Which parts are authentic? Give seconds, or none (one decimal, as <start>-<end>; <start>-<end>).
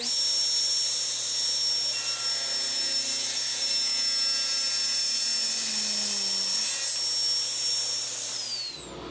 0.0-9.1